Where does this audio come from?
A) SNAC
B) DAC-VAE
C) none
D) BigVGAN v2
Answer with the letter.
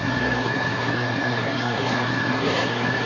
A